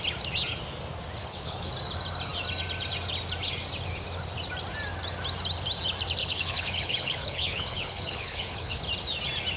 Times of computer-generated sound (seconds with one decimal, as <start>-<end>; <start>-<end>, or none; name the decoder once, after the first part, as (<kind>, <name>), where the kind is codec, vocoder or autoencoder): 1.2-1.7 (codec, HILCodec); 6.2-8.8